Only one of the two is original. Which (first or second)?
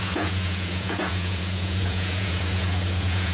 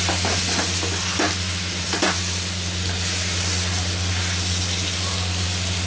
second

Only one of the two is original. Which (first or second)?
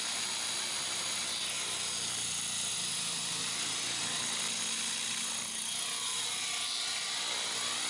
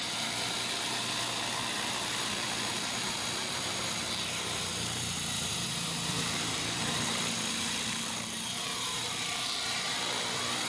first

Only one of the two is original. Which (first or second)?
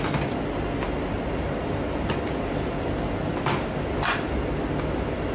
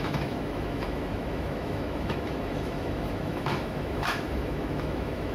first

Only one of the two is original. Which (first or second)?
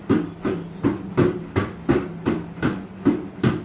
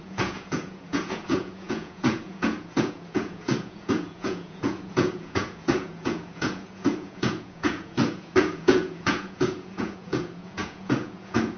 first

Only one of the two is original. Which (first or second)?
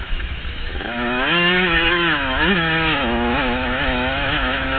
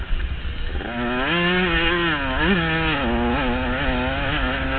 second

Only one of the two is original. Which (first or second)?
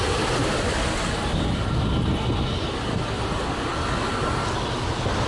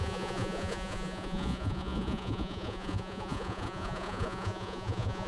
first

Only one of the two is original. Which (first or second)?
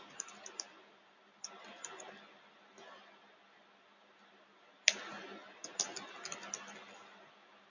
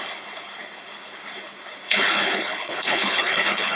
first